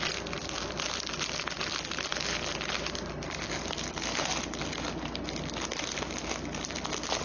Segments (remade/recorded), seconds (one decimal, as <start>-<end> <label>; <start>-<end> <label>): 0.0-7.2 recorded